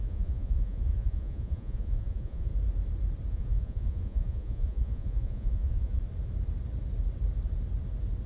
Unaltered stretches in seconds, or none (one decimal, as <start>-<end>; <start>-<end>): 2.5-3.3; 6.0-8.3